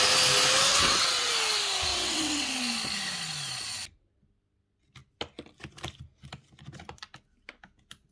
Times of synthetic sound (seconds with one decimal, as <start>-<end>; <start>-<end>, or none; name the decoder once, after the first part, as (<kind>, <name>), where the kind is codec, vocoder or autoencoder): 0.7-1.3 (vocoder, WaveNeXt); 1.9-2.5